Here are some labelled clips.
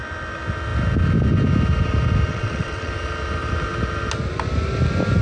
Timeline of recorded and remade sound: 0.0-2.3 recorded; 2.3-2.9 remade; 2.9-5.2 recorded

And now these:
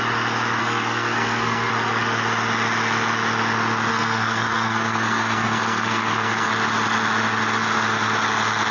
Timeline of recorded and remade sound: 0.0-0.6 recorded; 0.6-1.7 remade; 1.7-3.9 recorded; 3.9-6.5 remade; 6.5-8.7 recorded

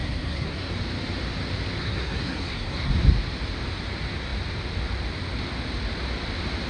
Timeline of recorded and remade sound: 0.0-0.7 remade; 0.7-1.8 recorded; 1.8-2.9 remade; 2.9-6.7 recorded